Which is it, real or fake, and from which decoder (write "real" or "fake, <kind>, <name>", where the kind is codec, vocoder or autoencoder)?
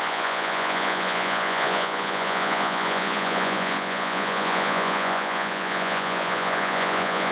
fake, vocoder, Vocos